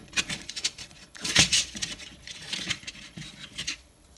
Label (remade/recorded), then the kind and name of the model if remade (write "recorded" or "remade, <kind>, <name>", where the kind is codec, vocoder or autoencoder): remade, vocoder, Vocos